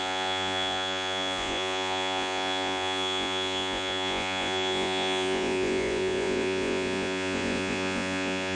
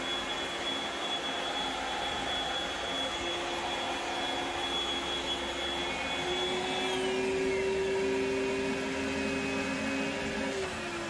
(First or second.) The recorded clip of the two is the second